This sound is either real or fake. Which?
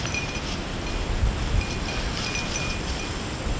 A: real